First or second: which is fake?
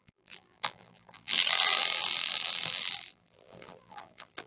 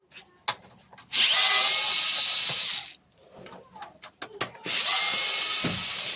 first